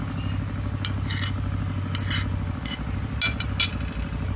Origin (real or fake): real